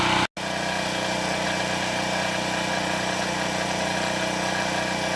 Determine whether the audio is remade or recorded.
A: recorded